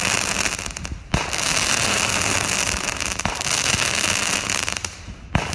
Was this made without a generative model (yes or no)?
yes